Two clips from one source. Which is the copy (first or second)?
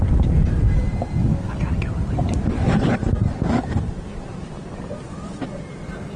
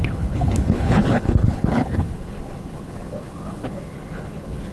second